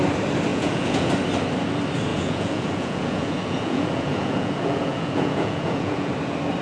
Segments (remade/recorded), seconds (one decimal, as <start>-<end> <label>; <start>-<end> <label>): 0.0-0.5 recorded; 0.5-1.1 remade; 1.1-2.1 recorded; 2.1-6.1 remade; 6.1-6.6 recorded